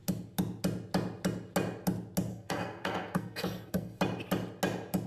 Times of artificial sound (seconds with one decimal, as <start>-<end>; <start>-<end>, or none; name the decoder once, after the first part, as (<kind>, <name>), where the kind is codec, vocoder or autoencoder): 2.3-4.0 (codec, SNAC)

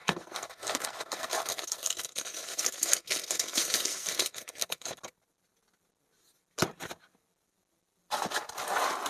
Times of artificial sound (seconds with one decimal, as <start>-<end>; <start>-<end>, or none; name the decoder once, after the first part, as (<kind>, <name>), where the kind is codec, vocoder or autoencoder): 0.0-5.0 (codec, SNAC)

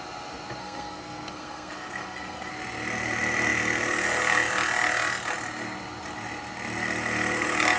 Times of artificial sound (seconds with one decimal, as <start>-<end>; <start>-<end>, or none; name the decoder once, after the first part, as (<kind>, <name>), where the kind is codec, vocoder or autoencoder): 0.6-2.5 (codec, SNAC)